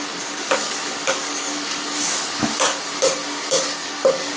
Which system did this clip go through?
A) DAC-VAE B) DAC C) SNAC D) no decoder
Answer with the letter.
B